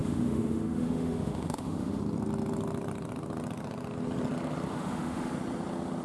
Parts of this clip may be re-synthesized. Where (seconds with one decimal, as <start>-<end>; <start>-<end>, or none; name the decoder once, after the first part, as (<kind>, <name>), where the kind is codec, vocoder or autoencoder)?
0.0-2.0 (autoencoder, DAC-VAE); 4.7-5.3